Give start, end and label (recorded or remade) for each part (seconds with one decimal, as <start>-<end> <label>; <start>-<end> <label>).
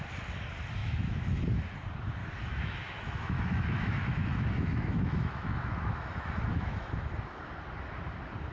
0.0-0.8 recorded; 0.8-1.4 remade; 1.4-2.2 recorded; 2.2-6.9 remade; 6.9-8.5 recorded